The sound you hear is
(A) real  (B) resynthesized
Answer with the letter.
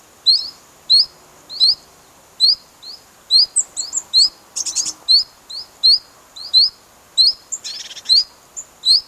A